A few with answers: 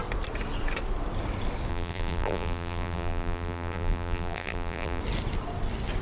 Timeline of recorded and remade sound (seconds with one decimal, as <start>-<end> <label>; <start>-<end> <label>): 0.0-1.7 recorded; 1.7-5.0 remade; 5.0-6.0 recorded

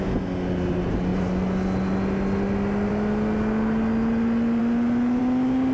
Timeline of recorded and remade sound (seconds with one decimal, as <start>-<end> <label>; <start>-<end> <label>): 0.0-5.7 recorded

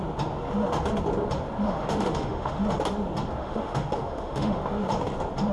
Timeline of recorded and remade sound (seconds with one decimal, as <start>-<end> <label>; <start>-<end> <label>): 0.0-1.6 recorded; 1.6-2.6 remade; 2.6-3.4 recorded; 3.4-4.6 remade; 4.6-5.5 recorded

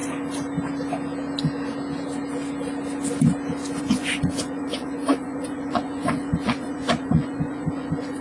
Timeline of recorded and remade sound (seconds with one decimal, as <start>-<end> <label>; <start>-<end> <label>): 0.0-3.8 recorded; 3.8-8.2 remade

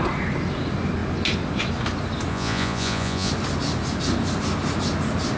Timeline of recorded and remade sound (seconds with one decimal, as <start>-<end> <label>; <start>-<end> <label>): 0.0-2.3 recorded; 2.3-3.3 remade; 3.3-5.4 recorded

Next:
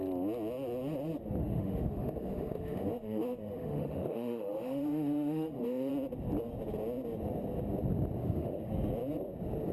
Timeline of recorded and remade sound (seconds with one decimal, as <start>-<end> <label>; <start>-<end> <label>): 0.0-1.4 recorded; 1.4-5.9 remade; 5.9-8.2 recorded; 8.2-8.7 remade; 8.7-9.7 recorded